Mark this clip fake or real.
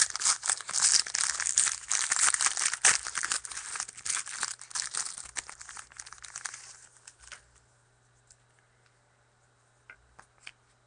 real